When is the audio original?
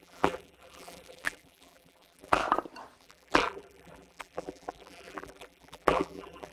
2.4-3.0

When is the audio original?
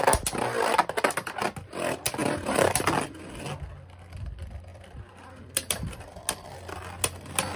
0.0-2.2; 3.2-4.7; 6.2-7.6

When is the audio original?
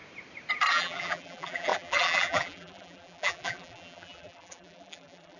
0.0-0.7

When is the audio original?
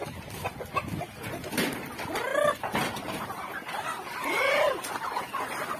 0.0-2.3; 5.2-5.8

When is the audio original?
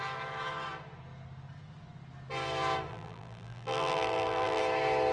0.0-2.9; 4.6-5.1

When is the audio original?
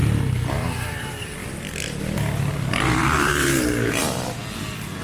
0.5-3.0; 4.0-5.0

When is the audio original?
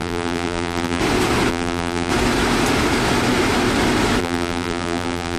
1.0-1.5; 2.1-4.2